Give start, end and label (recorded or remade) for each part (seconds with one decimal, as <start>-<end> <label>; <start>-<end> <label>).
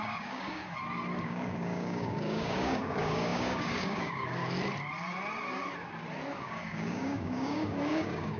0.0-0.6 remade; 0.6-1.2 recorded; 1.2-4.4 remade; 4.4-6.4 recorded; 6.4-8.4 remade